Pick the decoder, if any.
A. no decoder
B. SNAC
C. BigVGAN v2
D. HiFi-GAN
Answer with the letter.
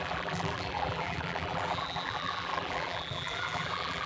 C